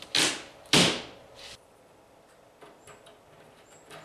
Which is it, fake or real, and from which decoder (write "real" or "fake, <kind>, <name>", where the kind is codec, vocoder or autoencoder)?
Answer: real